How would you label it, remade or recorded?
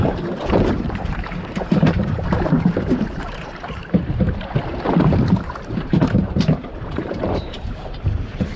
remade